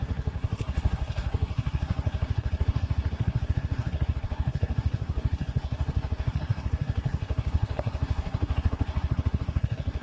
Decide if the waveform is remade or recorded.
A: remade